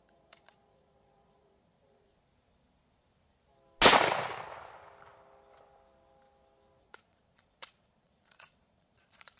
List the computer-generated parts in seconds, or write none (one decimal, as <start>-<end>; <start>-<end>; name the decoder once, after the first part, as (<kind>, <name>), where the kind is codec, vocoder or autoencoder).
0.0-2.1 (vocoder, Vocos); 6.8-9.4